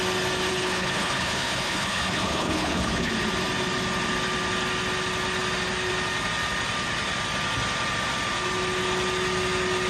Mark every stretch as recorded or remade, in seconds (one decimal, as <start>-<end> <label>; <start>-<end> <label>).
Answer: 0.0-0.5 recorded; 0.5-3.1 remade; 3.1-9.9 recorded